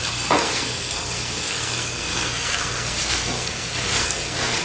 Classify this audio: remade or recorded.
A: remade